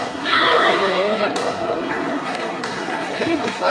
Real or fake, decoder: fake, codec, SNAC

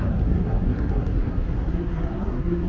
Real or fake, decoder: fake, codec, SNAC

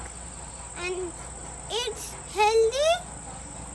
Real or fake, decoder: real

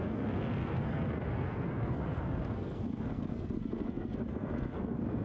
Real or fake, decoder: fake, codec, SNAC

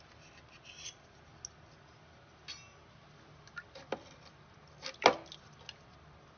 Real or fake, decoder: real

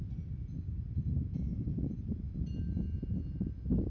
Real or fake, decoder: real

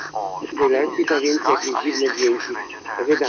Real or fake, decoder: fake, autoencoder, DAC-VAE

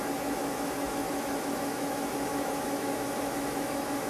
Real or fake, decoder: fake, autoencoder, DAC-VAE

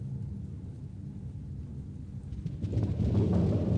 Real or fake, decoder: real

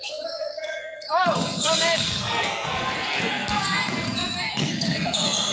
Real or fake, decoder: fake, codec, SNAC